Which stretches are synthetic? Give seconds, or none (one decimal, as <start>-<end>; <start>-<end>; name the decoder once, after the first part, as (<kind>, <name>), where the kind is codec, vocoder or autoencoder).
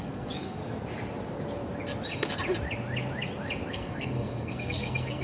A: 0.0-0.6 (codec, SNAC); 3.7-5.2